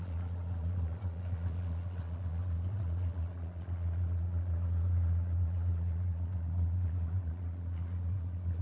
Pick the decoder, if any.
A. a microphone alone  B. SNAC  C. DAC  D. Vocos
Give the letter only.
D